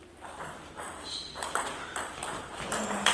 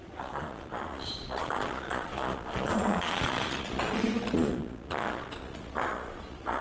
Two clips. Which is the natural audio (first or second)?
first